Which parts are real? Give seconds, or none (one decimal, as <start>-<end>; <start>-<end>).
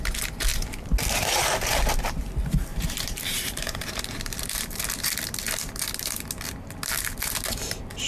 0.0-2.7; 4.8-8.1